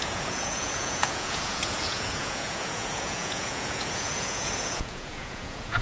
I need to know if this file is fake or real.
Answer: fake